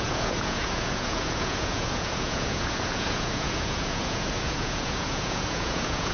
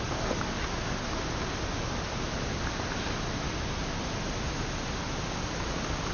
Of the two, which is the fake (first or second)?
first